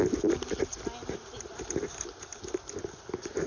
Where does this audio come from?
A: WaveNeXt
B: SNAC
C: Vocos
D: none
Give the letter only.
D